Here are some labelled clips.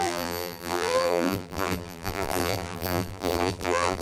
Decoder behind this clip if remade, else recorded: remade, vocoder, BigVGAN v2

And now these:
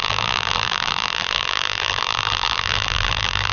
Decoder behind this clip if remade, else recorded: remade, vocoder, BigVGAN v2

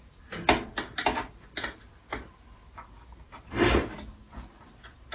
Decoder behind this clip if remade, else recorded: recorded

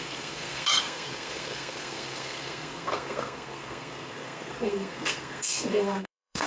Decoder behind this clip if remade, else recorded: remade, codec, SNAC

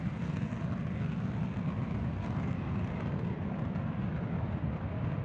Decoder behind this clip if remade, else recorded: recorded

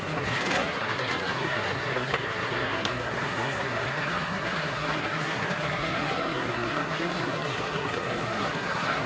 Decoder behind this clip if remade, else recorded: remade, codec, SNAC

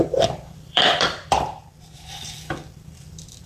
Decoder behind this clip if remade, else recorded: remade, vocoder, BigVGAN v2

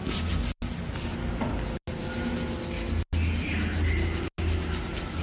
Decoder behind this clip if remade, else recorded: recorded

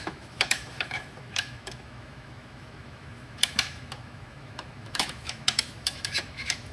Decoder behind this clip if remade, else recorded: remade, autoencoder, DAC-VAE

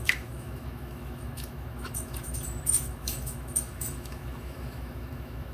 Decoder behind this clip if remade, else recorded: remade, autoencoder, DAC-VAE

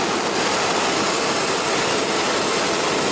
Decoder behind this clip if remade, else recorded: recorded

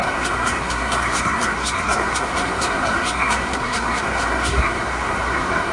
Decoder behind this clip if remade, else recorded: remade, codec, SNAC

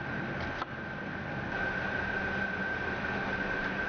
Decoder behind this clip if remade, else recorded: recorded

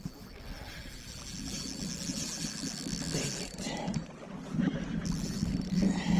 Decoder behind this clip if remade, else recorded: recorded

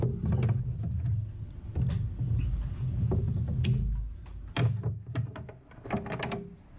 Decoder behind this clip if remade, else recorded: recorded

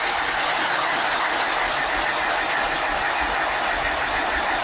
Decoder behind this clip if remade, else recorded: recorded